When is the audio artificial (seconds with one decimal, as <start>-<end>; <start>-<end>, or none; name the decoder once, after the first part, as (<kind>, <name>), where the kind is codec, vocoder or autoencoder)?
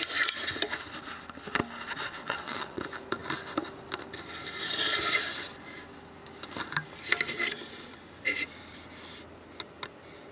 2.2-2.8 (vocoder, WaveNeXt)